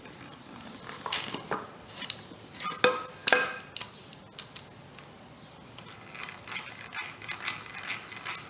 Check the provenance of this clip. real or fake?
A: real